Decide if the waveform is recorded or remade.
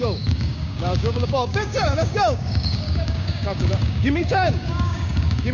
remade